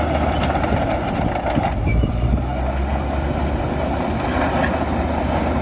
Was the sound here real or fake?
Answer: real